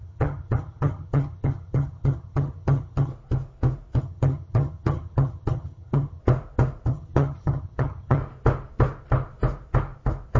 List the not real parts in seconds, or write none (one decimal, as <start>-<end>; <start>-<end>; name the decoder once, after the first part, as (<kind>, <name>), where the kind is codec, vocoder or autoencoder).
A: 0.0-3.1 (vocoder, HiFi-GAN); 4.0-6.2; 6.9-8.2